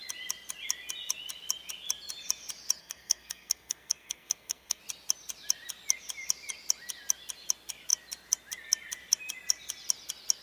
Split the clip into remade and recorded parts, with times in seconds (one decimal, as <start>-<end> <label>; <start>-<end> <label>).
0.0-2.8 recorded; 2.8-4.8 remade; 4.8-10.4 recorded